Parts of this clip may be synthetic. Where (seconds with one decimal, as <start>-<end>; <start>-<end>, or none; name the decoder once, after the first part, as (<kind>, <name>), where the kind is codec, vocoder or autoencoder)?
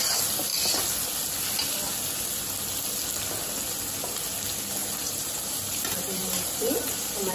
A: 4.8-7.3 (vocoder, BigVGAN v2)